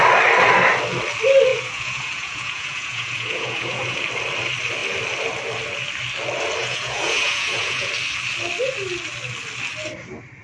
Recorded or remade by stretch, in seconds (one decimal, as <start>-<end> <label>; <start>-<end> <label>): 0.0-1.5 recorded; 1.5-4.0 remade; 4.0-6.6 recorded; 6.6-7.9 remade; 7.9-10.4 recorded